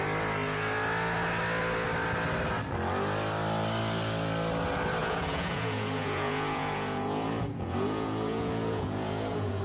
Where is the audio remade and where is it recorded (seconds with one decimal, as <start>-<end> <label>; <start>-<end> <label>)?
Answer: 0.0-5.0 recorded; 5.0-9.6 remade